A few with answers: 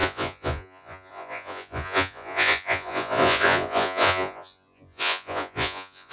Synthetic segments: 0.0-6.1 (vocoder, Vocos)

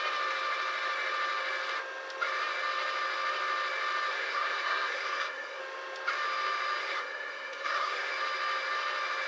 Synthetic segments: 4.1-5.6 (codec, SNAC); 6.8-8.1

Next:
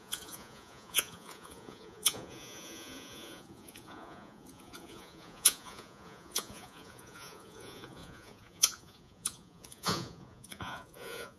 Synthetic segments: 0.0-11.4 (vocoder, Vocos)

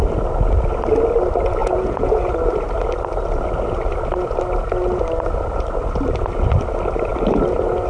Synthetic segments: 1.6-2.3 (vocoder, Vocos)